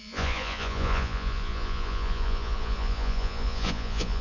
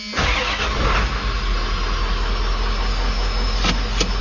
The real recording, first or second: second